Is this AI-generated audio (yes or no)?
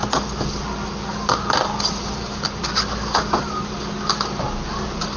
no